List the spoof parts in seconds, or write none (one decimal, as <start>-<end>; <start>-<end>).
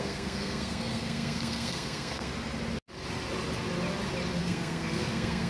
0.0-2.3; 4.4-5.5